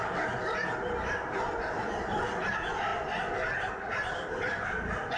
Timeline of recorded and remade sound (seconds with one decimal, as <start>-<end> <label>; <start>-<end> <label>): 0.0-5.2 recorded

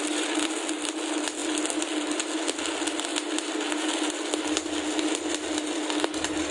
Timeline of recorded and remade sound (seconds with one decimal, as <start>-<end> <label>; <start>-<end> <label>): 0.0-6.5 recorded

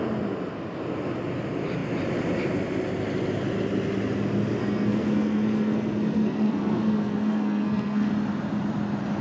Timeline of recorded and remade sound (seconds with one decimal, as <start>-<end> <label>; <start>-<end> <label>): 0.0-4.6 recorded; 4.6-8.1 remade; 8.1-9.2 recorded

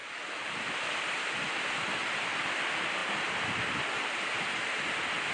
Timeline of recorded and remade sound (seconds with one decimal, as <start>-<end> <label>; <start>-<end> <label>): 0.0-5.3 recorded

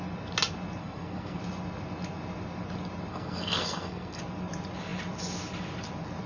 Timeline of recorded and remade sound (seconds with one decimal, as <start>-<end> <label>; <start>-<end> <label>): 0.0-0.8 recorded; 0.8-1.4 remade; 1.4-3.1 recorded; 3.1-4.2 remade; 4.2-6.3 recorded